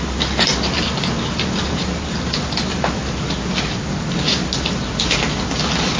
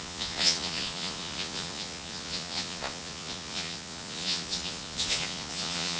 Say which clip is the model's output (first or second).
second